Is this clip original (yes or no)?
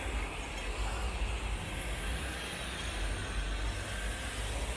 yes